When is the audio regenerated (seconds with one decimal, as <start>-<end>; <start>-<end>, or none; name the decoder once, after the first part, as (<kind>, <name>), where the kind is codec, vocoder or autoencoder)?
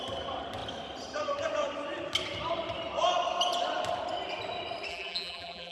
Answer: 4.9-5.7 (vocoder, BigVGAN v2)